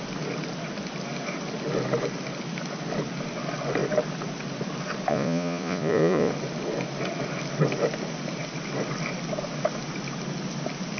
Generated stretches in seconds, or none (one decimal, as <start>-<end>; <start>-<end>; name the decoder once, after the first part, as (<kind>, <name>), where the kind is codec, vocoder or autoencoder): 5.1-6.3 (vocoder, Vocos)